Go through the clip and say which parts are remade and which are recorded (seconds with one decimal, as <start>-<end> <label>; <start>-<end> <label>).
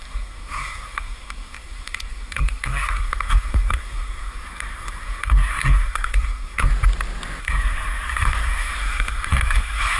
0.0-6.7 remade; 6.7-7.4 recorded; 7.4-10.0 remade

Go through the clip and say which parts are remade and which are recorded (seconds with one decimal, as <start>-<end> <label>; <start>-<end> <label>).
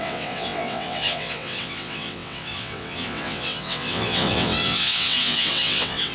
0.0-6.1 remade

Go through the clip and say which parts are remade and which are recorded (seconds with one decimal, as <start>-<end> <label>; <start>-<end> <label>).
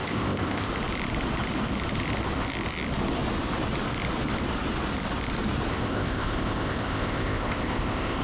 0.0-0.7 remade; 0.7-5.7 recorded; 5.7-8.2 remade